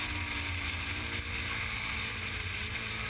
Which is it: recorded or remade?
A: recorded